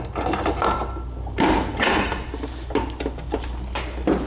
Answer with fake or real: real